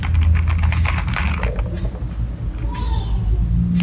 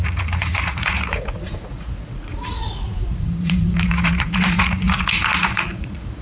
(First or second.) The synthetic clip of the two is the second